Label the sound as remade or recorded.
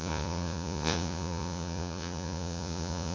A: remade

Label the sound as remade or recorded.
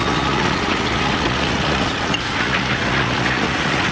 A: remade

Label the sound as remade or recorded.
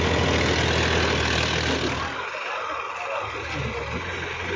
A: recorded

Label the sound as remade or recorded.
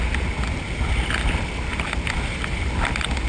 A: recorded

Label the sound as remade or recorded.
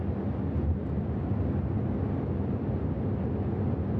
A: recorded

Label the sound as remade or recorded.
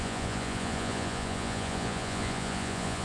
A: remade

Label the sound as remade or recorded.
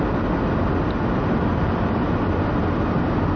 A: recorded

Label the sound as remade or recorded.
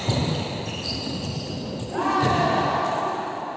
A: recorded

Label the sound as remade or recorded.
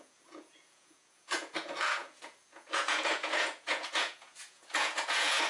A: remade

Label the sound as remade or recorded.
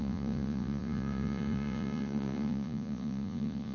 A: remade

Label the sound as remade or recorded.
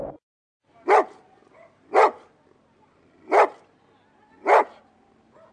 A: recorded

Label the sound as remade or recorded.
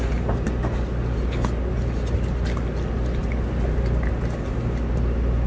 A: recorded